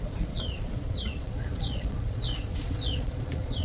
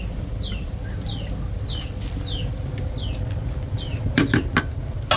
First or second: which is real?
second